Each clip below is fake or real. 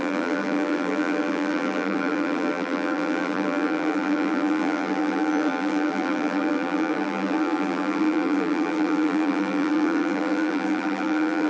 fake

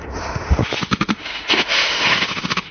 fake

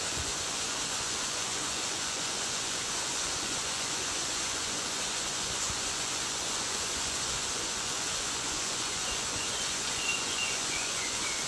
fake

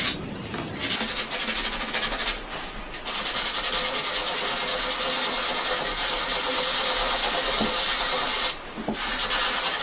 real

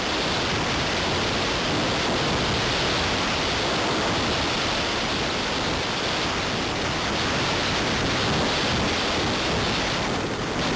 real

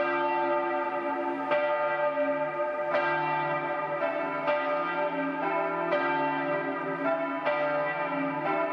real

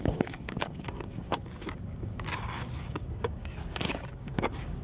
fake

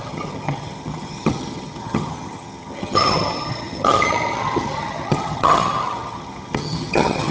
fake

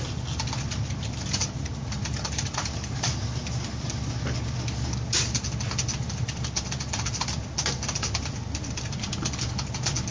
real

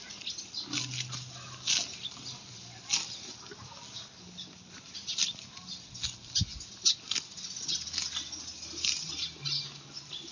real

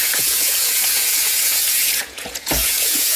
fake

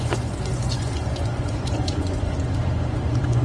fake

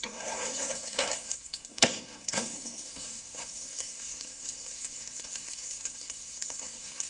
fake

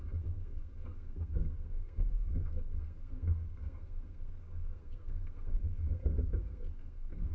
fake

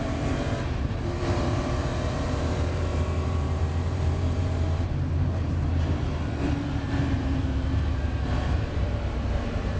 fake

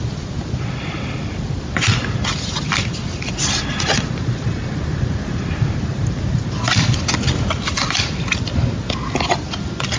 real